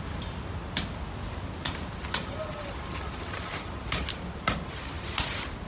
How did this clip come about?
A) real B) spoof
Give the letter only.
A